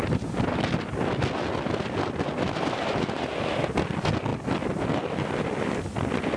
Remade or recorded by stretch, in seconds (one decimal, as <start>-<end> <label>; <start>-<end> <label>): 0.0-6.4 recorded